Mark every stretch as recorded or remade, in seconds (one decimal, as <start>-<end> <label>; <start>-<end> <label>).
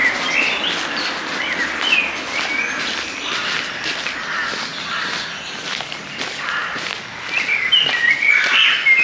0.0-9.0 recorded